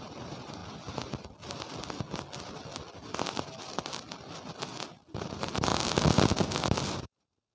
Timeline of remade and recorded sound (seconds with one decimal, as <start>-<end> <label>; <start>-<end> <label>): 0.0-0.6 remade; 0.6-5.1 recorded; 5.1-5.7 remade; 5.7-7.0 recorded; 7.0-7.5 remade